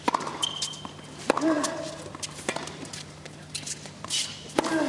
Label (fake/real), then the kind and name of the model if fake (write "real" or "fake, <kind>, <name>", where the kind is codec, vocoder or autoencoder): fake, vocoder, BigVGAN v2